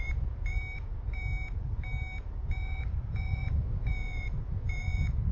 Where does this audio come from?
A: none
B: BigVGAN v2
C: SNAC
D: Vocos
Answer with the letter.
D